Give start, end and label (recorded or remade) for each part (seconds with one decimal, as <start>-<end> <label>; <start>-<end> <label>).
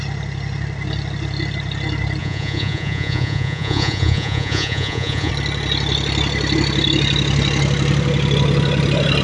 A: 0.0-2.2 recorded; 2.2-5.3 remade; 5.3-9.2 recorded